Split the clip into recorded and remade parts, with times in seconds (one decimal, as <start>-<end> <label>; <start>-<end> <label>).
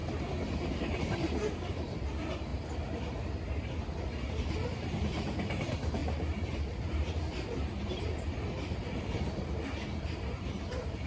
0.0-1.0 recorded; 1.0-2.5 remade; 2.5-4.0 recorded; 4.0-11.1 remade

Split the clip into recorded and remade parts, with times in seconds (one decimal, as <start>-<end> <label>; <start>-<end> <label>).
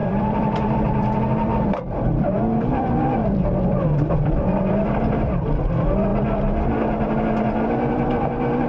0.0-6.1 remade; 6.1-7.9 recorded; 7.9-8.7 remade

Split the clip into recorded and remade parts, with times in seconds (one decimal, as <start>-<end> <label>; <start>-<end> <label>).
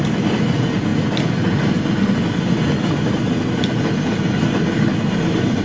0.0-0.9 remade; 0.9-2.6 recorded; 2.6-5.6 remade